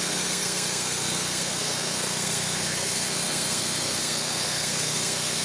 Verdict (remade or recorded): remade